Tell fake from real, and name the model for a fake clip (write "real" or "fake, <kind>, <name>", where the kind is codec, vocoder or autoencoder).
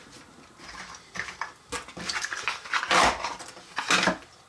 real